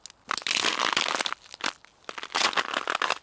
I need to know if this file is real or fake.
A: real